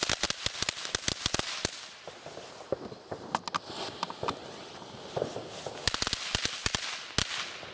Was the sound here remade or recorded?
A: recorded